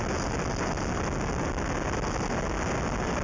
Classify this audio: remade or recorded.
recorded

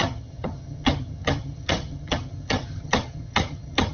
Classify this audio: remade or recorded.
remade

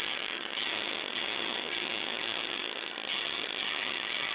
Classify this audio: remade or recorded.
remade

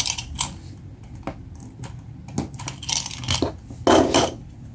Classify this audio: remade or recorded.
recorded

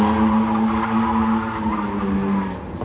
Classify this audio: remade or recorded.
recorded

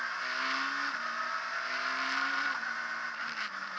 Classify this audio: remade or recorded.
recorded